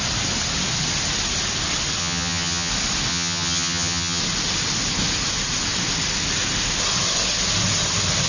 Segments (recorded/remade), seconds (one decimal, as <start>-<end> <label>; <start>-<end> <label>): 0.0-2.0 recorded; 2.0-2.7 remade; 2.7-3.1 recorded; 3.1-4.2 remade; 4.2-8.3 recorded